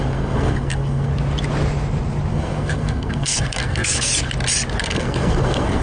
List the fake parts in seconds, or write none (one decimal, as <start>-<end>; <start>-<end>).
0.0-1.1; 2.3-4.1; 4.8-5.8